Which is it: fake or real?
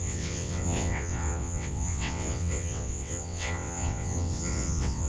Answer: fake